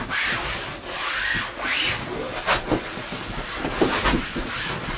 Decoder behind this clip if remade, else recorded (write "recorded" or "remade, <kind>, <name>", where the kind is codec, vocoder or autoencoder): recorded